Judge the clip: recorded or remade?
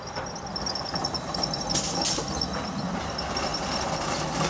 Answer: recorded